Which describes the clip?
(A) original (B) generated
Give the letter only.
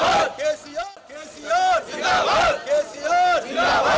A